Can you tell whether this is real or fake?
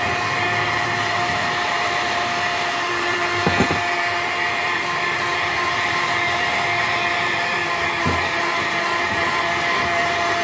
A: fake